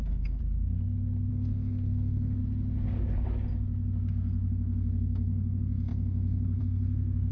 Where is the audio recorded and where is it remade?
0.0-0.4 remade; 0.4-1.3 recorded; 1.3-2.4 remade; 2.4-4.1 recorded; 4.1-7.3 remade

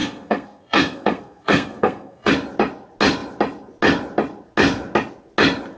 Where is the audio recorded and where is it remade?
0.0-2.3 remade; 2.3-5.8 recorded

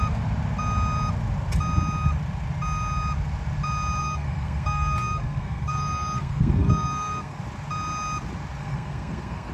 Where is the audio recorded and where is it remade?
0.0-4.0 recorded; 4.0-7.4 remade; 7.4-8.6 recorded; 8.6-9.5 remade

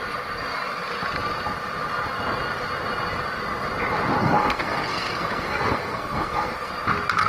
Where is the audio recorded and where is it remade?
0.0-4.2 recorded; 4.2-6.7 remade; 6.7-7.3 recorded

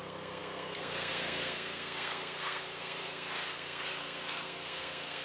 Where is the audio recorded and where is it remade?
0.0-5.2 remade

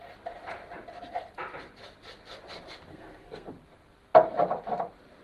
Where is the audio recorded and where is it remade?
0.0-2.9 recorded; 2.9-3.5 remade; 3.5-5.2 recorded

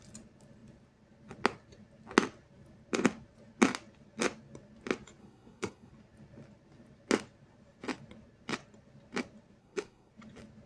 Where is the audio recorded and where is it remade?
0.0-5.2 recorded; 5.2-5.9 remade; 5.9-9.6 recorded; 9.6-10.1 remade; 10.1-10.7 recorded